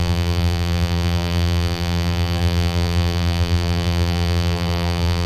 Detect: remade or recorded remade